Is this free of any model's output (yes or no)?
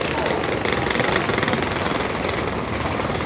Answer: yes